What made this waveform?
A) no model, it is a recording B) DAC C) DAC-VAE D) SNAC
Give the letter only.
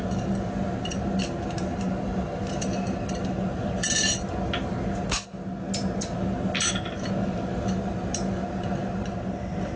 A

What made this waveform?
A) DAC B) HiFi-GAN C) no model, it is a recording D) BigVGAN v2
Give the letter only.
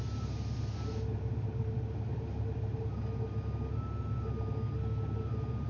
C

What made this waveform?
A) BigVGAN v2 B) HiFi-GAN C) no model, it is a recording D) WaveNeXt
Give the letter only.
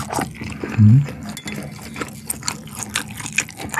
C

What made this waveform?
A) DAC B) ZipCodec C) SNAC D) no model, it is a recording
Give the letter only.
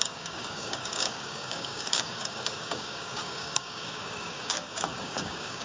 A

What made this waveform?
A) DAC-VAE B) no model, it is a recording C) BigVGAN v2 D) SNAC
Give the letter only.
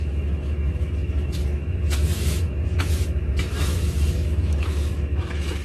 A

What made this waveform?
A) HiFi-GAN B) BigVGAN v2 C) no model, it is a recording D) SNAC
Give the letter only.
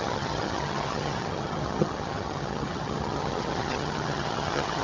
A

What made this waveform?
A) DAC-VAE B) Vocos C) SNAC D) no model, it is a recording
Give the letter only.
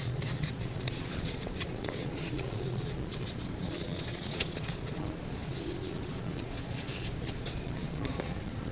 B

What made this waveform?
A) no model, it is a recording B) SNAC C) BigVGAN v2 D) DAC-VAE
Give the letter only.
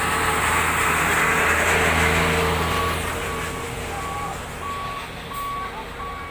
A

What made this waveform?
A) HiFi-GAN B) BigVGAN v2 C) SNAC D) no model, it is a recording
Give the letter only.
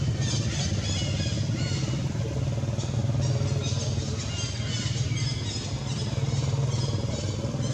D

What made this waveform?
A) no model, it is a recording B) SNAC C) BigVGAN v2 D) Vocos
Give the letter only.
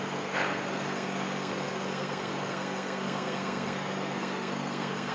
B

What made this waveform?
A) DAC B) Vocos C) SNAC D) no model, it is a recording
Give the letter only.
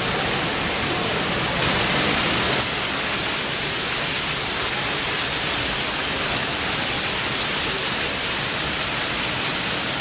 D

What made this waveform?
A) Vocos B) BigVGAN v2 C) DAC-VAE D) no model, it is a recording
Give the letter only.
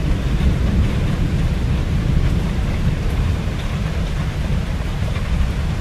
B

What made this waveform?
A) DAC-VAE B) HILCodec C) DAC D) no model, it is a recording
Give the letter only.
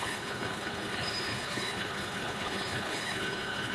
B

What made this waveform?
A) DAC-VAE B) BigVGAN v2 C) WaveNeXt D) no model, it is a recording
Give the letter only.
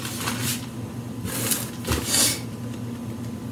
D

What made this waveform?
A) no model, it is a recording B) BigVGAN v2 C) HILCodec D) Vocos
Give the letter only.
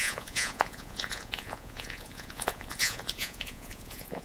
D